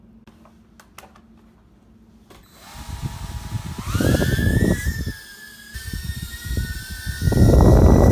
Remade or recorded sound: recorded